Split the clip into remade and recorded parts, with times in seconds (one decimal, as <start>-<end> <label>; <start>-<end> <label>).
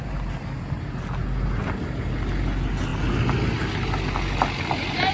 0.0-5.1 recorded